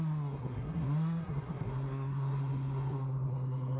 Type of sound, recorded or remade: remade